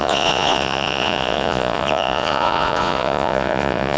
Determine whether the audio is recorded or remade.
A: remade